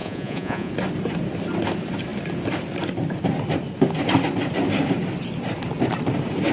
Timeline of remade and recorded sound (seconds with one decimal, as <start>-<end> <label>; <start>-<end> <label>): 0.0-0.7 remade; 0.7-6.5 recorded